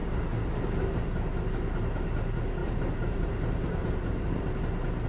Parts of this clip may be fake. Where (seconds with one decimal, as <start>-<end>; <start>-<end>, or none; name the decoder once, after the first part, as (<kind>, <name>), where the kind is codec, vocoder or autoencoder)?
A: 2.6-4.6 (vocoder, BigVGAN v2)